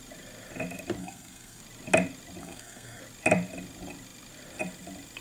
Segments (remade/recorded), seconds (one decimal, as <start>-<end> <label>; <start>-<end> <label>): 0.0-1.0 recorded; 1.0-1.6 remade; 1.6-2.4 recorded; 2.4-3.0 remade; 3.0-5.2 recorded

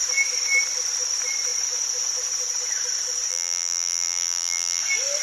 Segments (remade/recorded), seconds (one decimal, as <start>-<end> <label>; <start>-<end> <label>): 0.0-3.3 recorded; 3.3-4.8 remade; 4.8-5.2 recorded

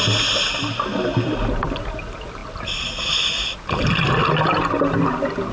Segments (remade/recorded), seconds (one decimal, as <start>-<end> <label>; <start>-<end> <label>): 0.0-5.5 recorded

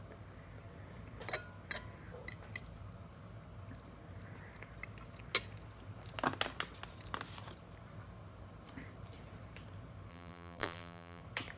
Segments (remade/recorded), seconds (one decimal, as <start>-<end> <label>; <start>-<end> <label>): 0.0-10.1 recorded; 10.1-11.2 remade; 11.2-11.6 recorded